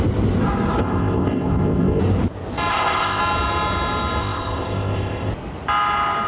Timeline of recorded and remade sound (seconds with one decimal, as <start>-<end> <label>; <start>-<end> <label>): 0.0-0.8 recorded; 0.8-2.0 remade; 2.0-2.7 recorded; 2.7-3.2 remade; 3.2-4.2 recorded; 4.2-5.3 remade; 5.3-6.3 recorded